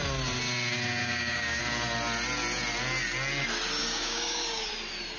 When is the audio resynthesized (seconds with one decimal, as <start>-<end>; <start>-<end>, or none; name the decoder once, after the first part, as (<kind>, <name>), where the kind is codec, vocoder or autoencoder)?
1.0-1.6 (codec, DAC); 3.8-4.7